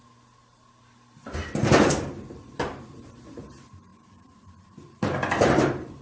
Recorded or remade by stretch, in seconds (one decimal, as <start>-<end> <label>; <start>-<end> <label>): 0.0-1.6 recorded; 1.6-2.6 remade; 2.6-3.9 recorded; 3.9-6.0 remade